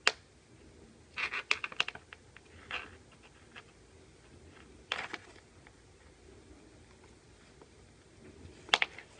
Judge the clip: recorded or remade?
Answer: recorded